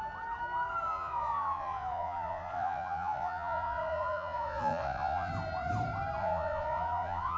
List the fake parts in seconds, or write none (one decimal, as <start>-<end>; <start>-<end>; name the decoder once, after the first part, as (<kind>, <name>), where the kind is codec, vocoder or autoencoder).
0.9-5.3 (vocoder, Vocos); 6.2-7.4